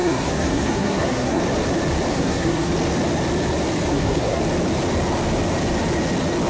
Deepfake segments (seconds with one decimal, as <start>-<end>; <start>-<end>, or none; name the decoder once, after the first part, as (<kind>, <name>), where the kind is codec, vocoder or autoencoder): 0.0-1.4 (codec, SNAC); 2.1-2.7; 3.9-4.4